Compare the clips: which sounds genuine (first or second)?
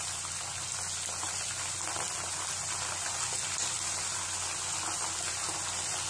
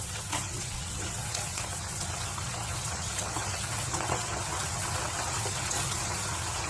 first